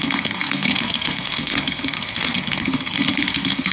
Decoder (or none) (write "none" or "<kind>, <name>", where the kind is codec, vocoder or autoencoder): codec, SNAC